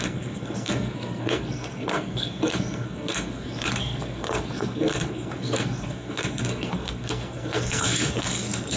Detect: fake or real fake